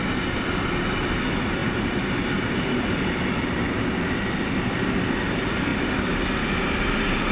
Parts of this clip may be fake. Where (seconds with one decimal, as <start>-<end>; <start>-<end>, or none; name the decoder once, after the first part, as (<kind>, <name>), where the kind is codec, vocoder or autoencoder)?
none